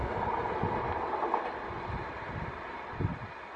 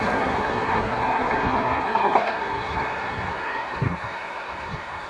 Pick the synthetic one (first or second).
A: second